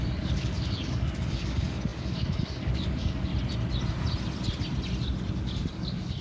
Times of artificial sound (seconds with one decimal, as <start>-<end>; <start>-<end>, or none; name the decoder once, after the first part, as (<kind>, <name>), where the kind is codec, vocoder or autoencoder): 0.0-3.3 (codec, DAC); 5.3-6.2